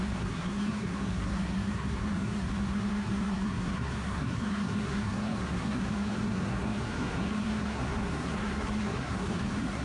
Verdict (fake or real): fake